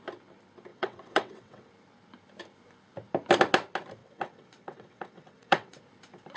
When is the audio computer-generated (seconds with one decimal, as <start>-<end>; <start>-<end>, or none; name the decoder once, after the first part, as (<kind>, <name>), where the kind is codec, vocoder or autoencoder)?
0.7-1.7 (vocoder, WaveNeXt); 4.0-5.8